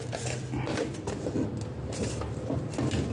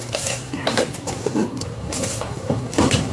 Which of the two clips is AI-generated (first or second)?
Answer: second